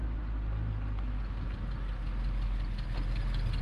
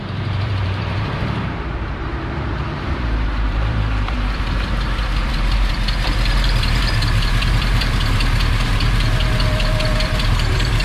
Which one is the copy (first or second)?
second